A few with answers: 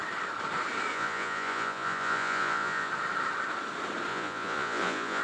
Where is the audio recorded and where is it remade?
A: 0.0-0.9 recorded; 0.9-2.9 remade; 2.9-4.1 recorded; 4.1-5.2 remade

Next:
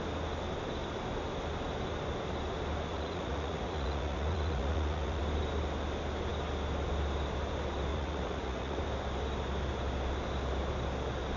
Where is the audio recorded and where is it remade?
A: 0.0-2.9 recorded; 2.9-5.2 remade; 5.2-7.9 recorded; 7.9-8.8 remade; 8.8-11.4 recorded

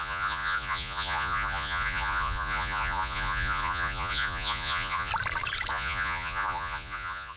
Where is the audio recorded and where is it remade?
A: 0.0-5.1 remade; 5.1-5.7 recorded; 5.7-7.4 remade

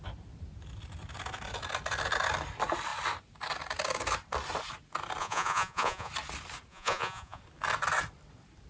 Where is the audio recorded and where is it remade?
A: 0.0-5.2 recorded; 5.2-6.1 remade; 6.1-6.7 recorded; 6.7-7.4 remade; 7.4-8.7 recorded

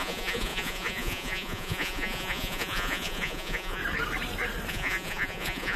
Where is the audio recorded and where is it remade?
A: 0.0-3.8 remade; 3.8-4.7 recorded; 4.7-5.8 remade

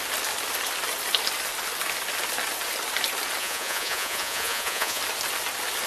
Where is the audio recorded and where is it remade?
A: 0.0-3.4 recorded; 3.4-5.0 remade; 5.0-5.9 recorded

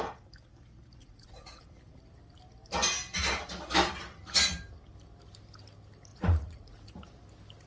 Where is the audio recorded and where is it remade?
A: 0.0-1.0 recorded; 1.0-1.6 remade; 1.6-6.1 recorded; 6.1-6.9 remade; 6.9-7.7 recorded

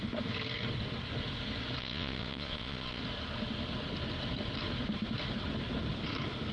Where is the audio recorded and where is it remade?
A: 0.0-1.8 recorded; 1.8-3.0 remade; 3.0-6.5 recorded